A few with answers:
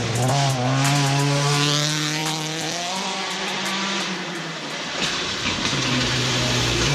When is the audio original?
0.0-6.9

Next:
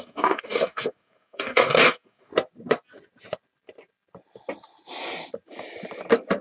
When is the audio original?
2.3-6.4

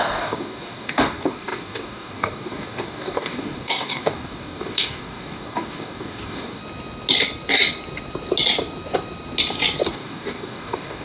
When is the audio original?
6.6-9.9

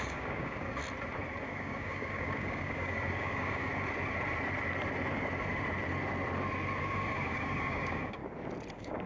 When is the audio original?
0.8-1.4; 3.7-6.8; 8.2-8.7

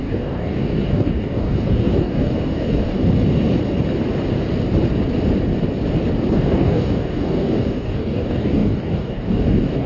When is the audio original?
3.0-6.3

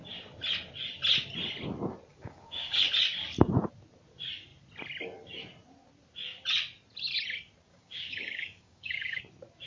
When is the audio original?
0.0-2.1; 2.9-7.7; 9.2-9.7